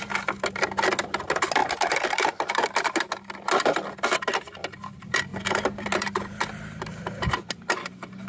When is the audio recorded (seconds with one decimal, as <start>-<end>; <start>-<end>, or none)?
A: 0.0-1.6; 3.1-5.3; 7.0-8.3